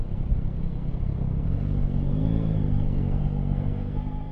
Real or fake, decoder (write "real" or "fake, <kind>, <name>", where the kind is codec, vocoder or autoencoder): fake, codec, SNAC